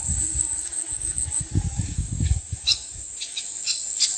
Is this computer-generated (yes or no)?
yes